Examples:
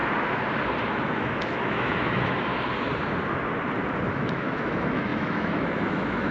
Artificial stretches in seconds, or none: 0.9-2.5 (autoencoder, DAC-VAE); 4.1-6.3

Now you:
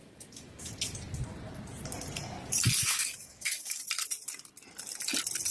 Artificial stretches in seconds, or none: 0.0-0.7 (autoencoder, DAC-VAE); 2.8-3.8

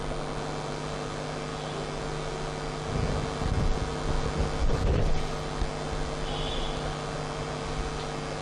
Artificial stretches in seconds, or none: none

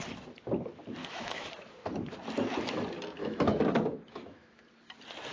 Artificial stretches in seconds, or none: 1.0-1.5 (autoencoder, DAC-VAE); 3.2-4.6

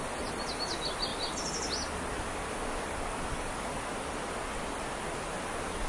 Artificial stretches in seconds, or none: none

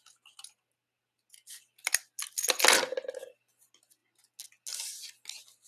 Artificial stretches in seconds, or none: none

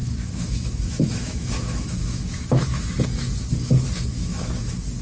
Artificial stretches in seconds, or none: 0.0-3.0 (autoencoder, DAC-VAE); 4.1-4.6

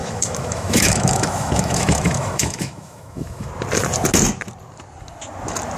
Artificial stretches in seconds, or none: 0.0-3.5 (autoencoder, DAC-VAE)